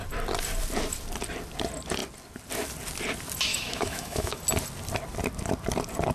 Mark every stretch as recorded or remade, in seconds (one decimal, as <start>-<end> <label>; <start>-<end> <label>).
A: 0.0-3.5 recorded; 3.5-4.4 remade; 4.4-6.1 recorded